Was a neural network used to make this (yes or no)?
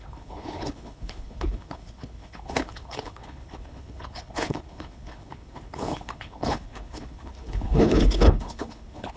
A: yes